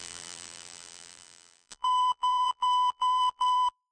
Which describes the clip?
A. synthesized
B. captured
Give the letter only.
A